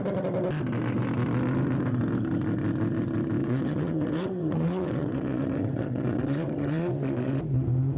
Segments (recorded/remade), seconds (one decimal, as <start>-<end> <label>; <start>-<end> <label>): 0.0-3.4 recorded; 3.4-7.4 remade; 7.4-8.0 recorded